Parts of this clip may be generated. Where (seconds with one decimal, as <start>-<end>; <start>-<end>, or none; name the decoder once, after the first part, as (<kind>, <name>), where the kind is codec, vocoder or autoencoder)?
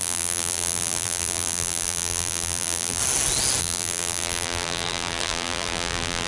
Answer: 0.0-3.0 (vocoder, BigVGAN v2); 3.6-6.3